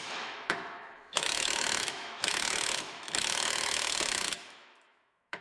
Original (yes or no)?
no